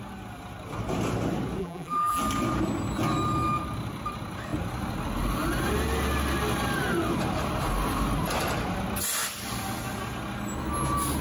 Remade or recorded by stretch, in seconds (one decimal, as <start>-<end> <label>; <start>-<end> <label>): 0.0-1.6 recorded; 1.6-2.2 remade; 2.2-11.2 recorded

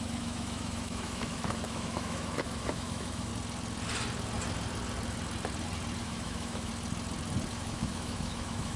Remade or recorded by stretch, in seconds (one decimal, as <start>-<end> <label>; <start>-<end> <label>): 0.0-3.3 remade; 3.3-6.0 recorded; 6.0-6.7 remade; 6.7-7.5 recorded; 7.5-8.8 remade

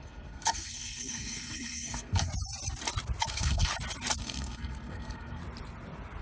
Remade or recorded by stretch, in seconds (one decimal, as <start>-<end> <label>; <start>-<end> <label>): 0.0-2.3 remade; 2.3-3.3 recorded; 3.3-3.7 remade; 3.7-4.2 recorded; 4.2-5.4 remade; 5.4-6.2 recorded

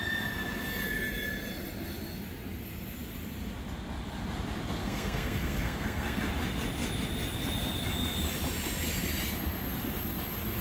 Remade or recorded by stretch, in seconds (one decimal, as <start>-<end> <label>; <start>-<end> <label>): 0.0-4.8 recorded; 4.8-6.2 remade; 6.2-10.6 recorded

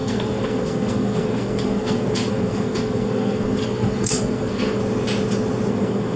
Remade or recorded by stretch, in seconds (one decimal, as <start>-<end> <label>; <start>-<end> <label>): 0.0-4.8 remade; 4.8-5.7 recorded; 5.7-6.2 remade

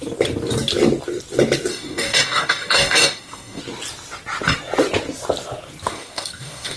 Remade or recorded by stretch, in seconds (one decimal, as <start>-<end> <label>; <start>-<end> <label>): 0.0-1.7 recorded; 1.7-3.6 remade; 3.6-5.9 recorded; 5.9-6.8 remade